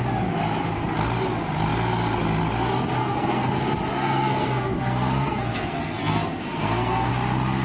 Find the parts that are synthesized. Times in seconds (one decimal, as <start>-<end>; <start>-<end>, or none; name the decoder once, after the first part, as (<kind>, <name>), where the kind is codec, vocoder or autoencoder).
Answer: 3.0-3.5 (codec, SNAC); 3.9-7.1